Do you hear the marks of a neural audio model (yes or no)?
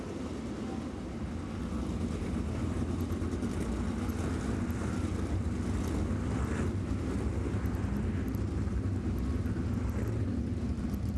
no